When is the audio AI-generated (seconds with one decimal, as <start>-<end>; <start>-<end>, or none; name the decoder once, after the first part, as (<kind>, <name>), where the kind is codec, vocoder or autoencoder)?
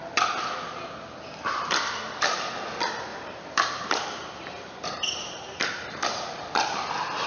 3.1-6.0 (vocoder, BigVGAN v2)